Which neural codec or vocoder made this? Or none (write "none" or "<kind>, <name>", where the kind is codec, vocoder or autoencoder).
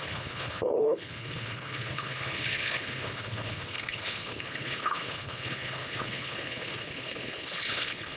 codec, HILCodec